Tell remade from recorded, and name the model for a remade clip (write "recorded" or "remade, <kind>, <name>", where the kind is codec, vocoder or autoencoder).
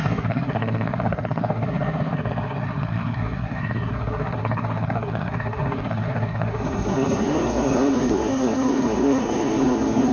remade, codec, SNAC